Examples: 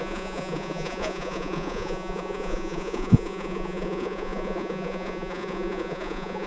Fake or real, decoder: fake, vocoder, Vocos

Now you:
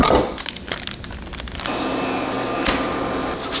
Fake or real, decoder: real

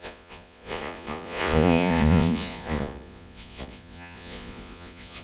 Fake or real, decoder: fake, vocoder, Vocos